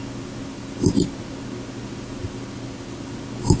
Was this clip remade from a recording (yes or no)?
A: no